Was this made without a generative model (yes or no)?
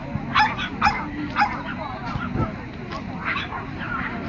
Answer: yes